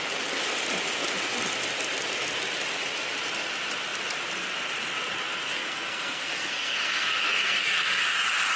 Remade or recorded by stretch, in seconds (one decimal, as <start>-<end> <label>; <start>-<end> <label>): 0.0-5.5 recorded; 5.5-8.0 remade; 8.0-8.6 recorded

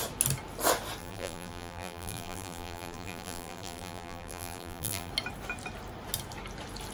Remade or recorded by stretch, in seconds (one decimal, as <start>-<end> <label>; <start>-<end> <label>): 0.0-1.0 recorded; 1.0-5.1 remade; 5.1-6.9 recorded

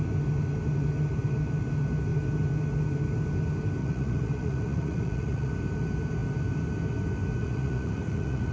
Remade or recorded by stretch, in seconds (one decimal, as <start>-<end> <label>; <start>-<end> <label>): 0.0-3.8 recorded; 3.8-5.5 remade; 5.5-7.4 recorded; 7.4-8.5 remade

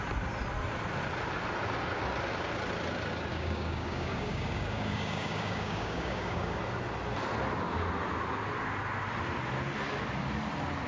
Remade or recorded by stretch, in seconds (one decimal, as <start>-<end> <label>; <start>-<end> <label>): 0.0-3.3 recorded; 3.3-6.6 remade; 6.6-10.9 recorded

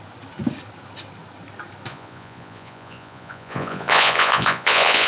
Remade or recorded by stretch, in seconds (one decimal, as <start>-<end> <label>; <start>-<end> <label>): 0.0-1.9 recorded; 1.9-5.1 remade

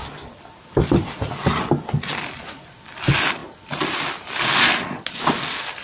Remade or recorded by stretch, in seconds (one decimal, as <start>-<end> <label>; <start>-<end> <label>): 0.0-5.8 recorded

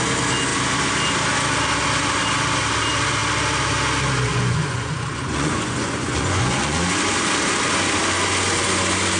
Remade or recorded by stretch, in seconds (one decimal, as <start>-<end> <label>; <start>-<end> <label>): 0.0-4.3 recorded; 4.3-6.8 remade; 6.8-9.2 recorded

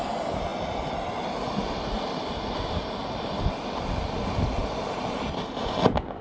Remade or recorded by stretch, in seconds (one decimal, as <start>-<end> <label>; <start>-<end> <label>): 0.0-6.2 recorded